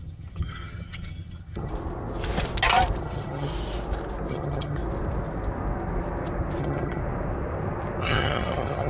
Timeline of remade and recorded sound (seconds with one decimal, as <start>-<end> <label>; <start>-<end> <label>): 0.0-1.7 remade; 1.7-3.0 recorded; 3.0-3.5 remade; 3.5-4.3 recorded; 4.3-4.8 remade; 4.8-6.6 recorded; 6.6-7.0 remade; 7.0-8.0 recorded; 8.0-8.9 remade